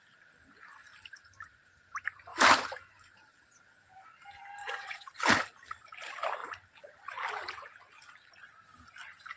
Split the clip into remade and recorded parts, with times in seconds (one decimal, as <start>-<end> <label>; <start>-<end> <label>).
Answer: 0.0-4.6 recorded; 4.6-5.2 remade; 5.2-9.4 recorded